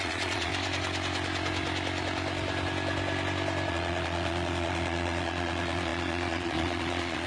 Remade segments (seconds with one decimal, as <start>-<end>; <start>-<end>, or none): 0.0-0.5; 3.7-7.3